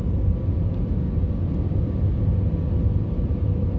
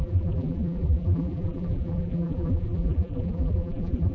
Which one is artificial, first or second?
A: second